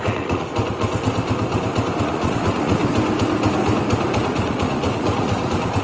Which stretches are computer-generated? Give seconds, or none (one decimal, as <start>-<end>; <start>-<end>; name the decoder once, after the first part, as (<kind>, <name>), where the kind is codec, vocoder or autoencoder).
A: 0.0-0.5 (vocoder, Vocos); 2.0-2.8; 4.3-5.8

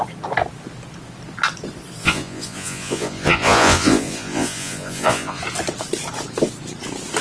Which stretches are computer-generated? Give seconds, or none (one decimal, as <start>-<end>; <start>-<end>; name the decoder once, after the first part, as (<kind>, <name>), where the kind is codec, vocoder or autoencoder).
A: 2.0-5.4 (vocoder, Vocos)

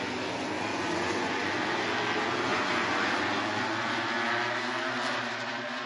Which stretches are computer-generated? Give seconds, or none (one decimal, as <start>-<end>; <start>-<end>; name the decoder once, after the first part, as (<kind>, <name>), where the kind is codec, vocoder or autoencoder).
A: 0.7-1.5 (vocoder, Vocos); 2.5-4.1

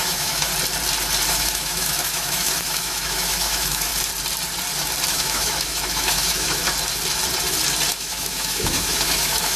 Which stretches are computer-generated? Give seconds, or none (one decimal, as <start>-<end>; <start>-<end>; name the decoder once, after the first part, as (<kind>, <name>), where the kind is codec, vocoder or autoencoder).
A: 0.0-0.5 (autoencoder, DAC-VAE); 1.3-3.9; 5.1-6.6; 7.9-9.6